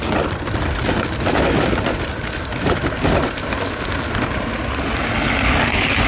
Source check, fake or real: real